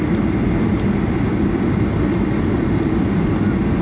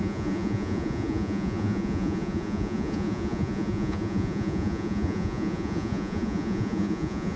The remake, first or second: second